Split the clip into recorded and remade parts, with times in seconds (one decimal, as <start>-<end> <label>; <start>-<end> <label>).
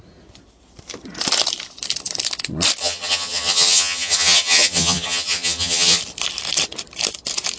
0.0-2.8 recorded; 2.8-6.0 remade; 6.0-7.6 recorded